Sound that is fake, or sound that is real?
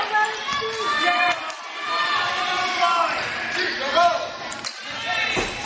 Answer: real